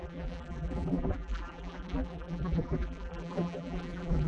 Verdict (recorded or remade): remade